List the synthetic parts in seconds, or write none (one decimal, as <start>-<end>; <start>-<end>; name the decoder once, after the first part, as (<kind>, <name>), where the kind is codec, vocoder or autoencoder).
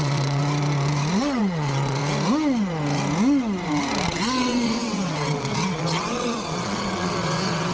0.0-0.4 (vocoder, WaveNeXt); 1.2-2.0; 4.1-7.7